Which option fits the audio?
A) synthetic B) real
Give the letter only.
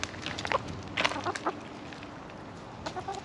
B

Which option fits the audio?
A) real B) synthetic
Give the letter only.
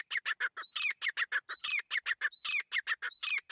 A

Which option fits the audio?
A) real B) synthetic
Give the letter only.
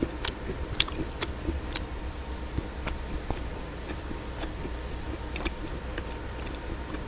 B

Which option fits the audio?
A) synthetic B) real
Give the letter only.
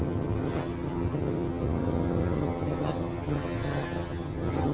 A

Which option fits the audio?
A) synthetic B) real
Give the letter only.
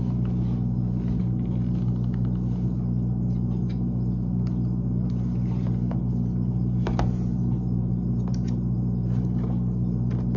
B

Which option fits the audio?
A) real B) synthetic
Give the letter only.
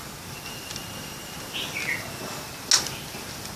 A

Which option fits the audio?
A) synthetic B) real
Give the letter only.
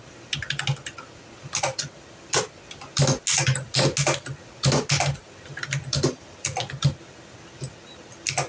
B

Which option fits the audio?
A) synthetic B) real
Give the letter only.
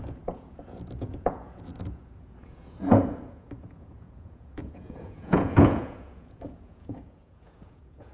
A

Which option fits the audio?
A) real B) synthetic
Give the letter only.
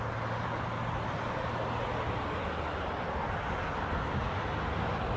A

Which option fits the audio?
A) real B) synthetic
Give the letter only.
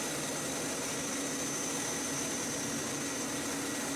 A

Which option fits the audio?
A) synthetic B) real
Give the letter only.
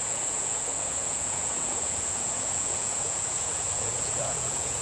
A